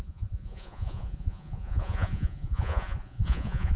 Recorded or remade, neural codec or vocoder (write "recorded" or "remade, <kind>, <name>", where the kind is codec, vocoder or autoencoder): remade, vocoder, Vocos